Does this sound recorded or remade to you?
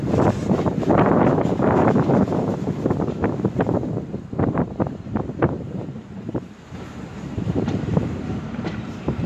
remade